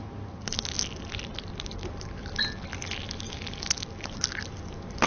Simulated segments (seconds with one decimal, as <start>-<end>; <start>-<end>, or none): none